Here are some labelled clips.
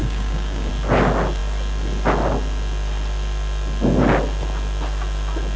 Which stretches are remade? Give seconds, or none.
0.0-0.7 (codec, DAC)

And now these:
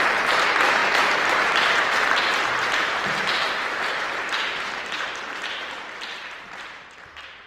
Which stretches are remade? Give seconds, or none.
0.0-7.5 (vocoder, BigVGAN v2)

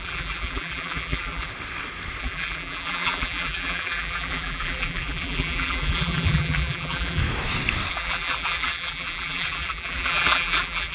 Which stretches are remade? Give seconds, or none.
0.0-1.5 (vocoder, BigVGAN v2); 2.2-7.2; 7.9-10.9

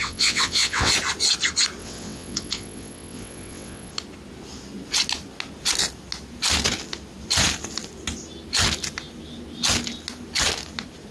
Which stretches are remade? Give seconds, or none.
0.0-0.9 (vocoder, WaveNeXt); 1.8-3.9

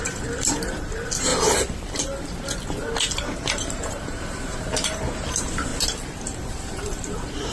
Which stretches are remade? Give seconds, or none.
0.0-1.3 (vocoder, BigVGAN v2); 3.5-5.7; 6.5-7.5

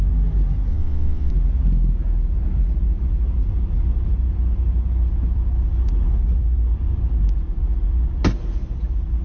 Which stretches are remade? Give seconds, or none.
0.7-1.3 (vocoder, WaveNeXt)

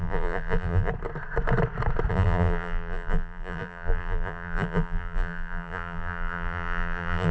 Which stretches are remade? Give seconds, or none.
0.0-0.9 (vocoder, BigVGAN v2); 2.1-7.3

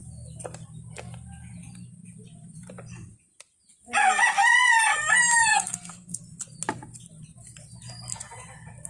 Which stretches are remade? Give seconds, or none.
5.5-6.2 (codec, SNAC)